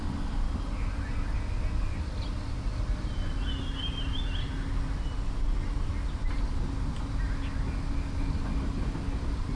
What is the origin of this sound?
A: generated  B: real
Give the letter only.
B